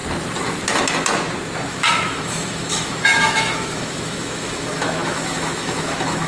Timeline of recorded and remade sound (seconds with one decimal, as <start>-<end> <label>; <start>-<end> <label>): 0.0-1.7 recorded; 1.7-6.3 remade